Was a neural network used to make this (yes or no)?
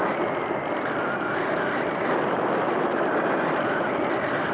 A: no